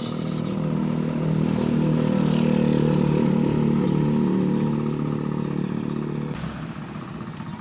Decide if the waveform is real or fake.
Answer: real